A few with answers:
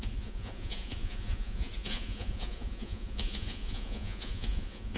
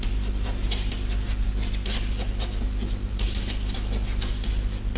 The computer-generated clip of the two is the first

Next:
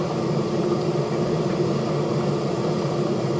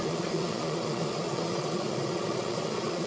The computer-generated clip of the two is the second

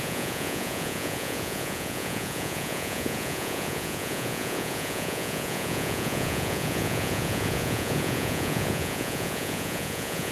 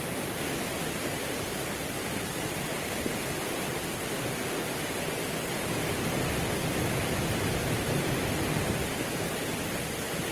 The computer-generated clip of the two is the first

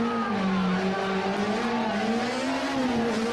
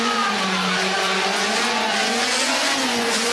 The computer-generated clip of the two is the second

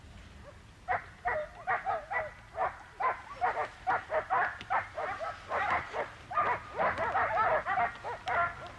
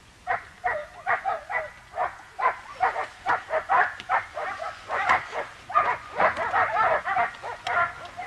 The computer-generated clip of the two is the second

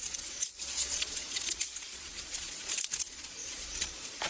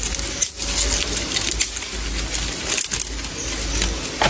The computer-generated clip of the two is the first